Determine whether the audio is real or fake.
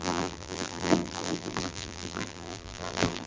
fake